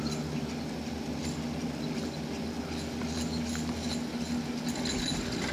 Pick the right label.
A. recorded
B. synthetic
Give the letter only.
A